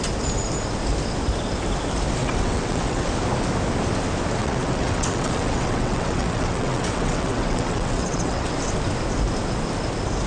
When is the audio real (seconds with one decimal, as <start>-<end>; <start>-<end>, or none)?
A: 0.0-2.2; 3.1-4.4; 8.5-10.3